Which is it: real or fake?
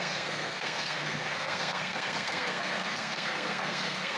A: fake